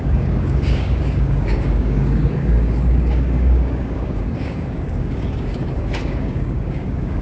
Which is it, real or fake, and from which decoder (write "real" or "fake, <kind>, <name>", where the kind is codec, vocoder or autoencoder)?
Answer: fake, codec, DAC